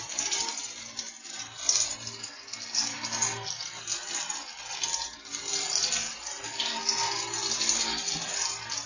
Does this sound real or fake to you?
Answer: real